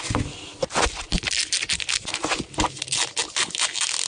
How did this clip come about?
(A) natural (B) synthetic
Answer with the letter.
A